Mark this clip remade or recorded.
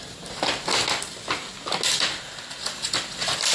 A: recorded